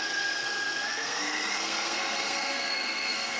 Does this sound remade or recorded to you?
remade